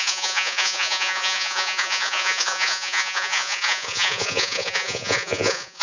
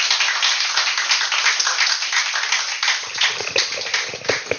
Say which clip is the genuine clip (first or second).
second